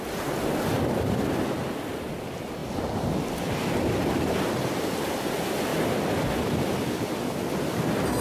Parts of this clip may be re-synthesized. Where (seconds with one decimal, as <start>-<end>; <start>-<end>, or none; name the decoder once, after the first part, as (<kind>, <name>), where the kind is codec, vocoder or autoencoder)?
none